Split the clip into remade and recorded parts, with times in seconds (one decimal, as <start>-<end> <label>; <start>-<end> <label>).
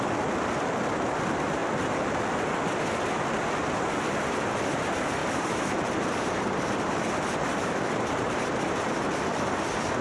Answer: 0.0-5.2 recorded; 5.2-8.8 remade; 8.8-10.0 recorded